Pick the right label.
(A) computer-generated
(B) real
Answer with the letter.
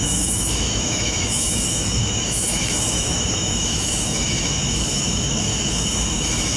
A